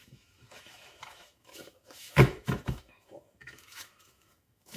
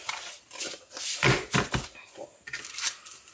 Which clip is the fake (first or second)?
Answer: first